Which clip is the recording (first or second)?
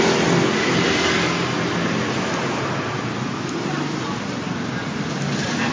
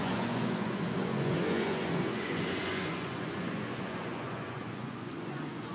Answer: first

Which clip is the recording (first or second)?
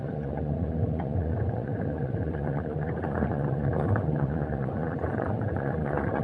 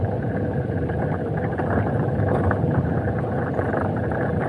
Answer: second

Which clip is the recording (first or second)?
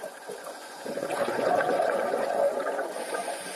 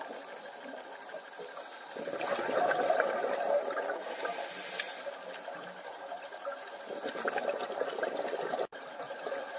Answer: second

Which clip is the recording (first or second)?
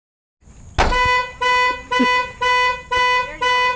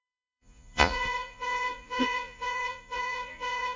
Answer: first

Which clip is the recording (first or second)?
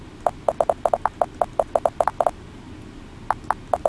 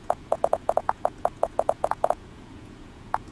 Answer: first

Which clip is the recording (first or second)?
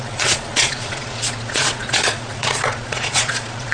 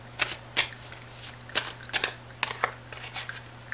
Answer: second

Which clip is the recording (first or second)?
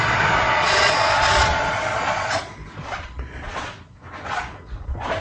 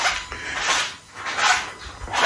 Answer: second